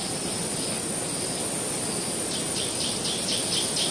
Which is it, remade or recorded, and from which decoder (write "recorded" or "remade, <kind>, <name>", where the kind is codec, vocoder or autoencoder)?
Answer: recorded